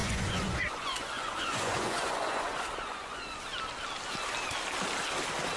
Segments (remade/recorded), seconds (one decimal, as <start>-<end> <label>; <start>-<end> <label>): 0.0-3.4 remade; 3.4-5.6 recorded